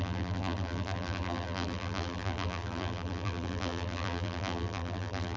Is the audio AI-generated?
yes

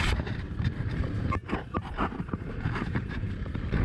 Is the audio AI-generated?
yes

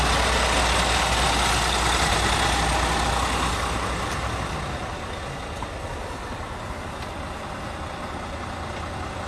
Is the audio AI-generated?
no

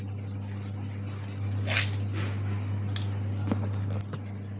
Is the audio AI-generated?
no